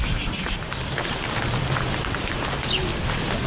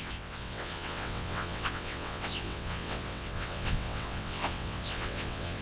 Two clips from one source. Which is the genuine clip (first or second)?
first